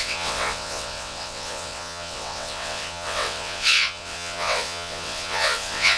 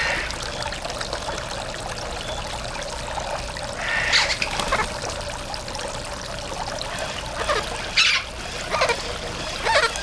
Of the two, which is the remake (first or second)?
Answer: first